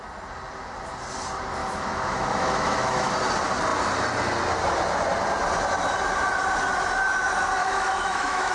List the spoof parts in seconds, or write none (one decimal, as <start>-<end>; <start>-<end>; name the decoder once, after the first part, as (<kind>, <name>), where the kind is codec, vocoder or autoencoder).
1.6-3.1 (autoencoder, DAC-VAE); 7.6-8.5